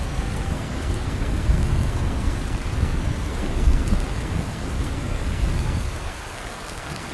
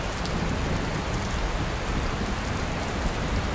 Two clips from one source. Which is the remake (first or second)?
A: first